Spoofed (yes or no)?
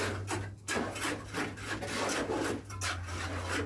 no